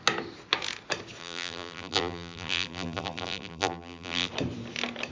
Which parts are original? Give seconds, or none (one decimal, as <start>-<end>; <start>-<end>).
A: 0.0-1.2; 4.3-5.1